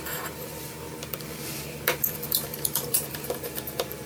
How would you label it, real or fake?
fake